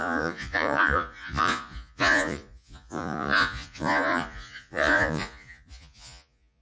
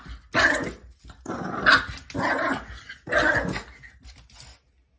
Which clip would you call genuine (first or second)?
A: second